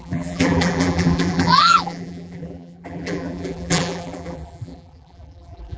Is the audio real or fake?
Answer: fake